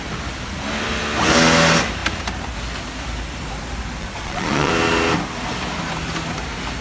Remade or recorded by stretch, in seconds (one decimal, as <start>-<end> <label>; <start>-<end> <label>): 0.0-4.0 recorded; 4.0-4.7 remade; 4.7-6.8 recorded